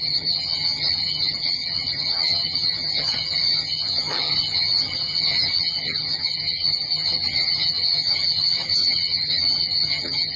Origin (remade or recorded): remade